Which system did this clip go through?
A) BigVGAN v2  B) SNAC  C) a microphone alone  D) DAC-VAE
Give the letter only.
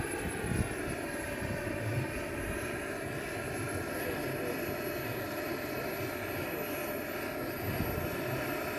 C